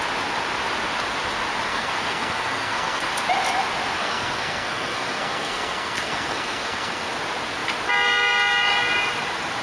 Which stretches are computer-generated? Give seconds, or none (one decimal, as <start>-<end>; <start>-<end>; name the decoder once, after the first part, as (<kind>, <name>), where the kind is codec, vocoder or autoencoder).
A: 1.7-3.1 (codec, SNAC); 4.0-7.1